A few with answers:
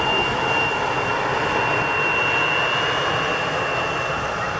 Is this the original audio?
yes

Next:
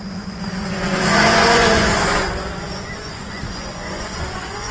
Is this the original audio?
no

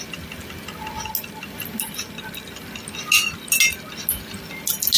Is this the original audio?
yes